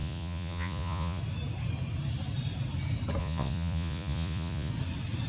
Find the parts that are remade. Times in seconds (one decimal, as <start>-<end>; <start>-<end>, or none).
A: 0.0-1.2; 3.2-4.7